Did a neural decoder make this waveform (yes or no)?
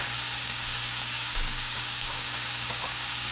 yes